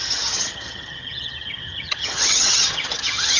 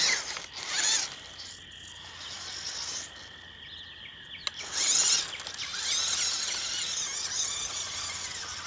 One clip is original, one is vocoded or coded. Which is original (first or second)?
second